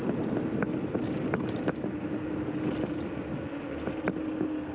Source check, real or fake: real